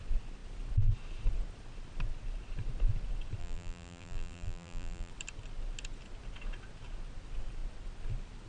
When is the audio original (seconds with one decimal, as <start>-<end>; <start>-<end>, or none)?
0.0-3.4; 5.1-8.5